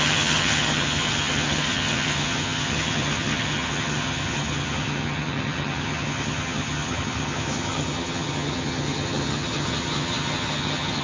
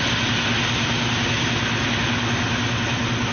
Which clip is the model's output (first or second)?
first